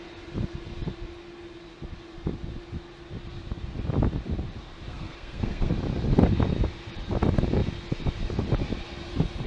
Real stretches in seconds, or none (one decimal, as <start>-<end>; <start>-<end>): 0.0-4.9; 5.7-9.5